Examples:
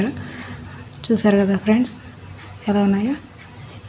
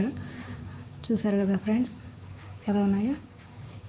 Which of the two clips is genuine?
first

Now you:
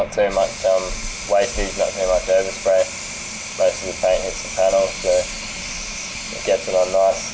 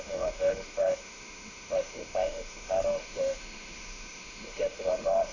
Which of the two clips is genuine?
first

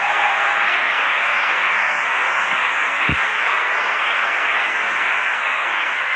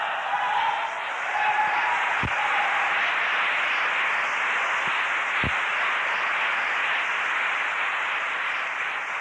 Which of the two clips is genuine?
second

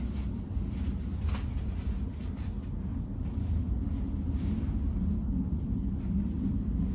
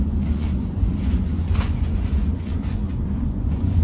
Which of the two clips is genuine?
first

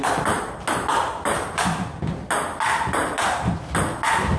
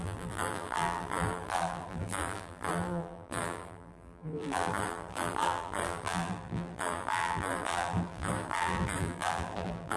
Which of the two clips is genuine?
first